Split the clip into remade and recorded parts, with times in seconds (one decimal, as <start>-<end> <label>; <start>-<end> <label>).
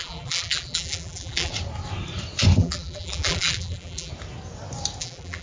0.0-1.5 remade; 1.5-2.6 recorded; 2.6-4.1 remade; 4.1-5.0 recorded; 5.0-5.4 remade